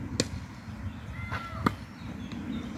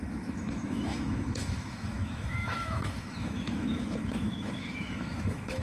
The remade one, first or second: second